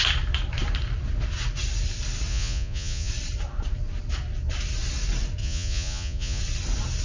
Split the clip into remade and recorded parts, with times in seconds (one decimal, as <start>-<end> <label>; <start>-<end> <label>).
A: 0.0-2.3 recorded; 2.3-3.1 remade; 3.1-5.4 recorded; 5.4-6.4 remade; 6.4-7.0 recorded